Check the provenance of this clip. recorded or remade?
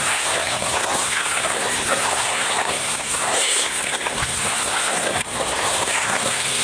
remade